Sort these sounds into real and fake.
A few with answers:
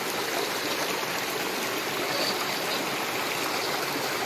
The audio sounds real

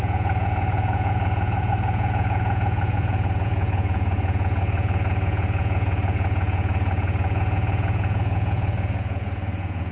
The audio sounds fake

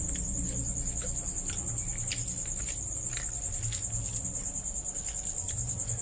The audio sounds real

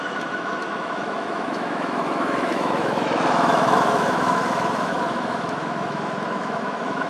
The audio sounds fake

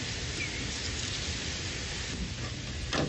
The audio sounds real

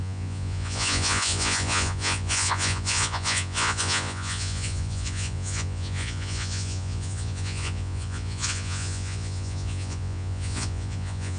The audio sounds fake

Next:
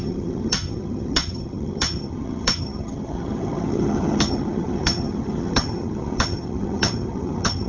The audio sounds fake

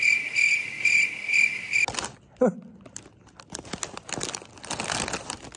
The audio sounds real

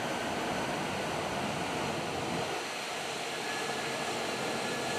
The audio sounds real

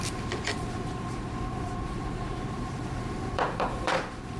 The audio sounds fake